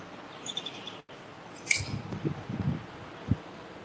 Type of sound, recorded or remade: recorded